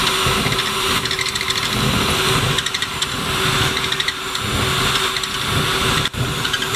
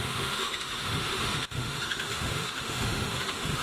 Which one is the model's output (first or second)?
second